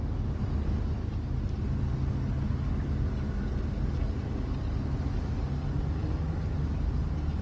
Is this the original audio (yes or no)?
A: yes